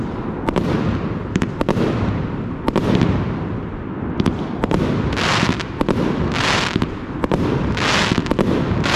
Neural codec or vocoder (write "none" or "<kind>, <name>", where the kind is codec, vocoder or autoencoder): none